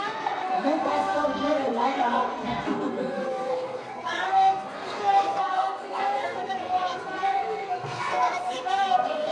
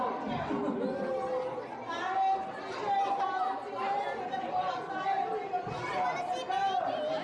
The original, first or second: second